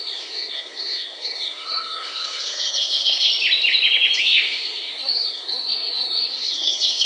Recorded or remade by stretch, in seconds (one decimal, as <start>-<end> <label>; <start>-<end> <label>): 0.0-3.3 remade; 3.3-4.2 recorded; 4.2-7.1 remade

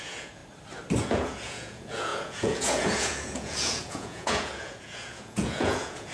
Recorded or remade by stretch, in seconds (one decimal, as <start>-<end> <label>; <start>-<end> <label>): 0.0-0.4 remade; 0.4-1.0 recorded; 1.0-6.1 remade

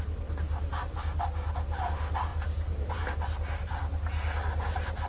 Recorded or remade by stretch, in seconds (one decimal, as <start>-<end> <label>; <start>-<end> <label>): 0.0-2.3 recorded; 2.3-3.1 remade; 3.1-5.1 recorded

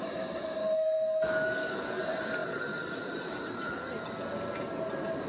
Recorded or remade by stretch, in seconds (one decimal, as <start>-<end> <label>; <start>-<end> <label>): 0.0-0.6 recorded; 0.6-2.0 remade; 2.0-5.3 recorded